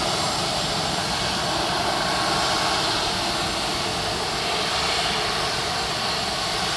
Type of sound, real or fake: fake